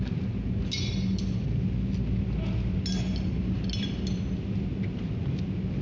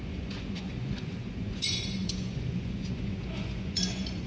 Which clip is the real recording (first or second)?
first